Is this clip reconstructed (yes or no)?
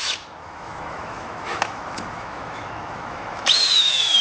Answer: yes